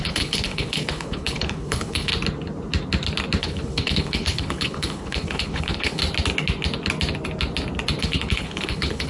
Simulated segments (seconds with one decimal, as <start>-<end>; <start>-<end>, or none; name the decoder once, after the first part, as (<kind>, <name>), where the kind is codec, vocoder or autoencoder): 0.0-2.1 (codec, HILCodec); 3.4-6.0; 8.0-9.1